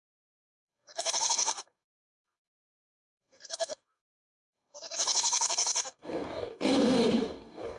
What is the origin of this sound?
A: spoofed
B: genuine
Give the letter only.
A